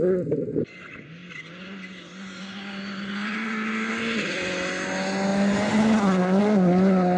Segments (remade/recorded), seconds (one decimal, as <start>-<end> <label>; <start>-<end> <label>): 0.0-7.2 recorded